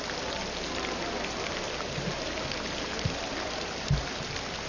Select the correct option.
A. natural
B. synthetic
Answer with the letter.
A